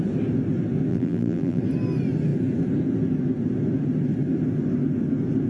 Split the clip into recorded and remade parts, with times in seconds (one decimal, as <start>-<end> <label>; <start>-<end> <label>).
0.0-0.9 recorded; 0.9-1.6 remade; 1.6-5.5 recorded